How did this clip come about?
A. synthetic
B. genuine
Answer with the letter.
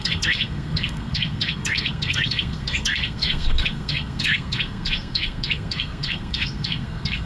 A